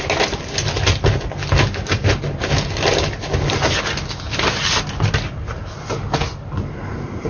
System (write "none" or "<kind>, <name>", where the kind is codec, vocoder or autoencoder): none